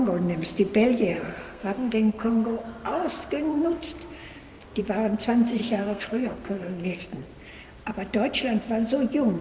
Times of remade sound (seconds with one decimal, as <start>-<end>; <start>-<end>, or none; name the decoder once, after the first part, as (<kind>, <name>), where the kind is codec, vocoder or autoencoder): 1.1-2.3 (codec, SNAC); 5.6-7.0

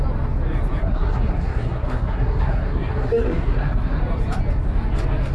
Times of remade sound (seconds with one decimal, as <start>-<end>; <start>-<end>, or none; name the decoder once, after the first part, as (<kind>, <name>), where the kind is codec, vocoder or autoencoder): 0.8-4.0 (codec, SNAC)